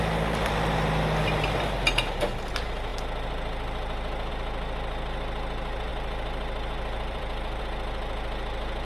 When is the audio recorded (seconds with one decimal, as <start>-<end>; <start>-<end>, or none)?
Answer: 0.0-5.9; 7.6-8.8